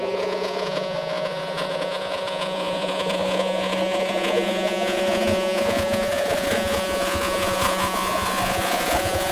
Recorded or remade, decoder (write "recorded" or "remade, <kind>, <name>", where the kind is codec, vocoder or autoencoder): remade, vocoder, Vocos